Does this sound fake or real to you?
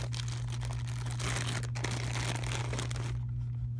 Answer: real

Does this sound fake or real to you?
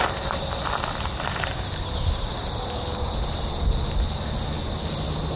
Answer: real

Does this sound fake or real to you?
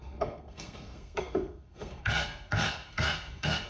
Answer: fake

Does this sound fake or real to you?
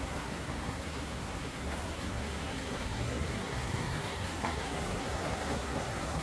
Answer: fake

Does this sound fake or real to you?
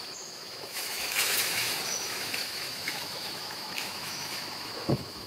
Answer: fake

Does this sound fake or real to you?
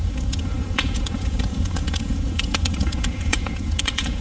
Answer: fake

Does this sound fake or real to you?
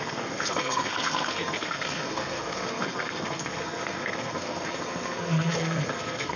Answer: fake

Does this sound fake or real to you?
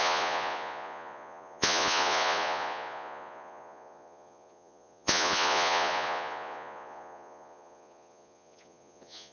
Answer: fake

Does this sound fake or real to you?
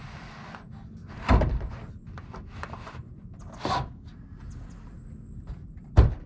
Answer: real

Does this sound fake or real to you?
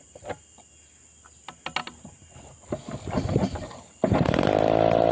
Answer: real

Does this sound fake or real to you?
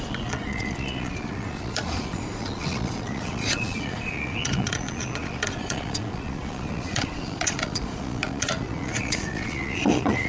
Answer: fake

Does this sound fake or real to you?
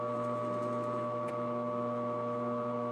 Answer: fake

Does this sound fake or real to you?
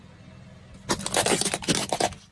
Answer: real